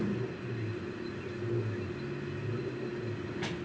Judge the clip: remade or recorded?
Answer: recorded